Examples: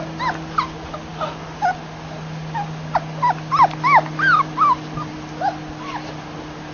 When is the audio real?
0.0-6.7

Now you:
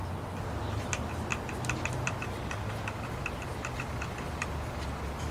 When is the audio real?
0.0-0.9; 1.3-4.4

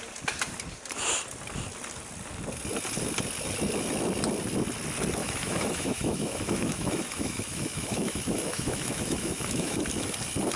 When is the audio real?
0.0-5.2; 9.8-10.6

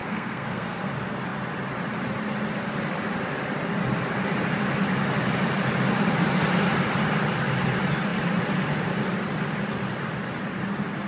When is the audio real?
0.9-11.1

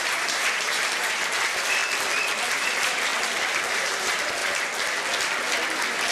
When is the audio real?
1.8-2.5; 3.1-3.7; 4.4-6.1

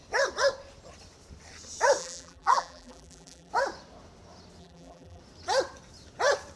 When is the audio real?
0.0-2.0; 3.5-4.6; 5.2-6.6

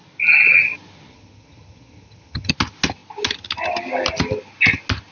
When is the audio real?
0.0-1.1; 2.5-5.1